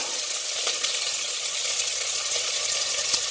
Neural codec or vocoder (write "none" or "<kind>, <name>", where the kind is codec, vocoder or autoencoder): vocoder, Vocos